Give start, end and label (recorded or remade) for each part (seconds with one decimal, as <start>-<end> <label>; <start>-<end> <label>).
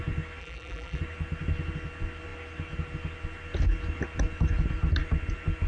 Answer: 0.0-0.4 recorded; 0.4-1.0 remade; 1.0-5.7 recorded